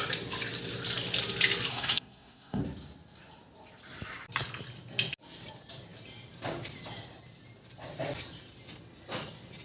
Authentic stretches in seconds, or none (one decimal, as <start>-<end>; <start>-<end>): 0.0-1.7; 2.6-9.6